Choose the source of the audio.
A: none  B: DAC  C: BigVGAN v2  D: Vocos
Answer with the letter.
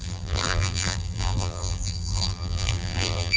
C